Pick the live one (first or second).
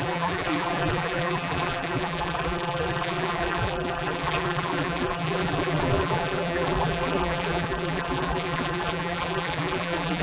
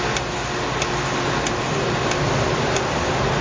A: second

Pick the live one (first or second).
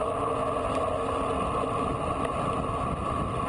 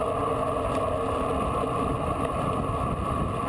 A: first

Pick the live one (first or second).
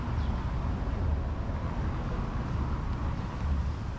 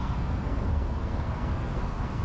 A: first